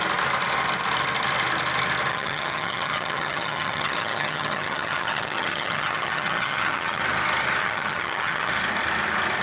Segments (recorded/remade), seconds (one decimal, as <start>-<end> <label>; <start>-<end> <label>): 0.0-2.1 recorded; 2.1-7.0 remade; 7.0-7.6 recorded; 7.6-8.5 remade; 8.5-9.4 recorded